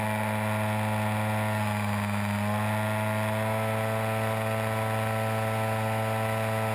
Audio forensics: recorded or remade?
recorded